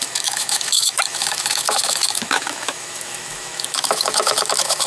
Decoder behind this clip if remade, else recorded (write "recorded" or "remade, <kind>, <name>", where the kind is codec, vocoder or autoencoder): remade, autoencoder, DAC-VAE